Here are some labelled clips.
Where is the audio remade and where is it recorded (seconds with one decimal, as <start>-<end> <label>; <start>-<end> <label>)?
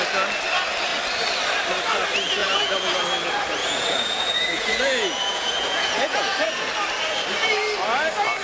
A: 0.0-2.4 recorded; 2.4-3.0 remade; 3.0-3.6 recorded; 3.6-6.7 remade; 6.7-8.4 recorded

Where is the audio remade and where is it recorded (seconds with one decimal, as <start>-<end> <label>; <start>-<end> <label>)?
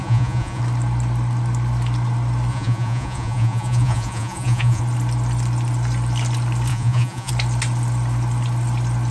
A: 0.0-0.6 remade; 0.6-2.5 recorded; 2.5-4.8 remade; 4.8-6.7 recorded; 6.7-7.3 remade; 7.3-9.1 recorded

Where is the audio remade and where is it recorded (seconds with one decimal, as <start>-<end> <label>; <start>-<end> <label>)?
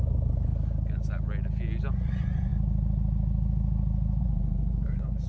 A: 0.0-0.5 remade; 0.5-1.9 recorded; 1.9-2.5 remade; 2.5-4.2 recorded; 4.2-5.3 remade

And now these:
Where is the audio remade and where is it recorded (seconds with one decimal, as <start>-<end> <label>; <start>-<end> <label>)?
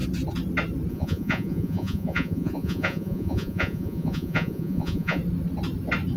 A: 0.0-0.9 recorded; 0.9-5.2 remade; 5.2-6.2 recorded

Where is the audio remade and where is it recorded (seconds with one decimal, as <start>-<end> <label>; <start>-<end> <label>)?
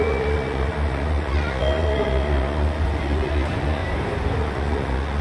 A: 0.0-3.8 remade; 3.8-4.4 recorded; 4.4-5.2 remade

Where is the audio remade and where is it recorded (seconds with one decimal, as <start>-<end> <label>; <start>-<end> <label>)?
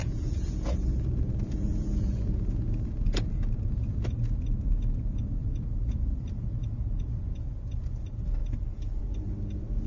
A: 0.0-3.9 remade; 3.9-5.4 recorded; 5.4-7.9 remade; 7.9-8.4 recorded; 8.4-9.0 remade; 9.0-9.9 recorded